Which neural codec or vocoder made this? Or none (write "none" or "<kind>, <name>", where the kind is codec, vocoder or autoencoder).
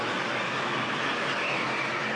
none